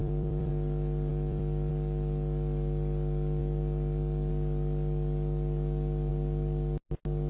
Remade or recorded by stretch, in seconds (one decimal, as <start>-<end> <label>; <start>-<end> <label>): 0.0-0.5 remade; 0.5-1.1 recorded; 1.1-1.7 remade; 1.7-3.4 recorded; 3.4-4.3 remade; 4.3-7.3 recorded